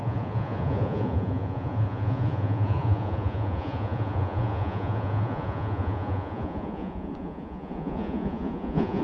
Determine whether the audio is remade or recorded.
remade